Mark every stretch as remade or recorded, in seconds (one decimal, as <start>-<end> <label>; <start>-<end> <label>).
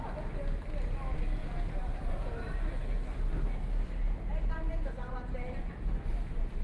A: 0.0-1.4 recorded; 1.4-2.5 remade; 2.5-4.3 recorded; 4.3-6.6 remade